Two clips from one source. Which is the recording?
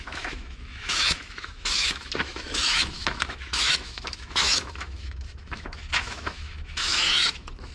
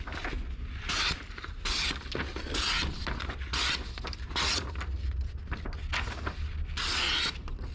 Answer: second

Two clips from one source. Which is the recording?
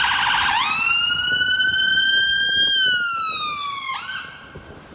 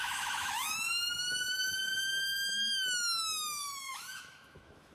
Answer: first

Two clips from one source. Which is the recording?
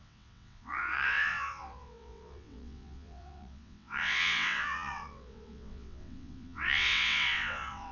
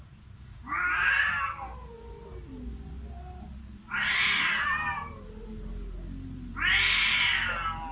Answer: second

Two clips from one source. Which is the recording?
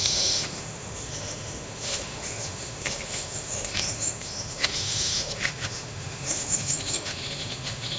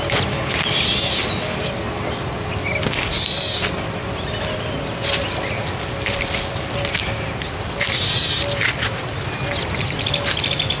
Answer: second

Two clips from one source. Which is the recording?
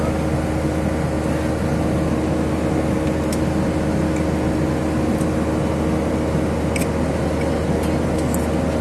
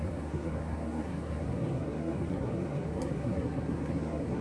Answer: first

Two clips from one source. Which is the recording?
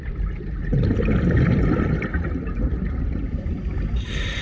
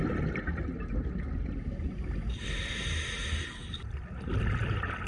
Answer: second